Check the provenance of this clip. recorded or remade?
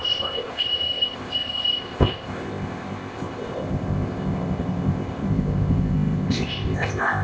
remade